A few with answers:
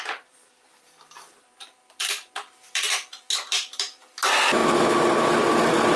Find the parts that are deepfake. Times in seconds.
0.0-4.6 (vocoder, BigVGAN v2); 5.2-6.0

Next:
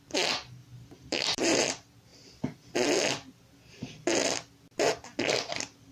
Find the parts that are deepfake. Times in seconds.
0.6-1.7 (vocoder, BigVGAN v2)

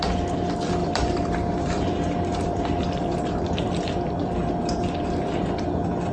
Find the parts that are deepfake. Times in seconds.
0.8-4.5 (vocoder, BigVGAN v2)

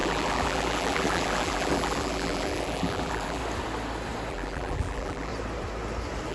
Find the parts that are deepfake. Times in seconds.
0.0-3.4 (vocoder, BigVGAN v2); 4.3-5.3

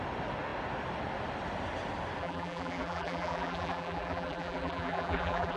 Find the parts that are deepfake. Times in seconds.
2.2-5.6 (vocoder, BigVGAN v2)

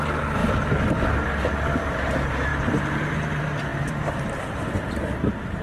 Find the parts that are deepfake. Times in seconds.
0.0-0.4 (vocoder, BigVGAN v2); 1.8-2.5; 3.0-5.6

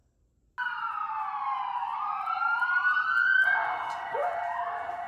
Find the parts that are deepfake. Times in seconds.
1.9-5.1 (vocoder, BigVGAN v2)

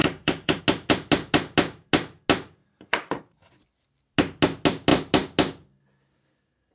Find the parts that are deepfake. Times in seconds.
0.0-0.6 (vocoder, BigVGAN v2); 2.6-3.2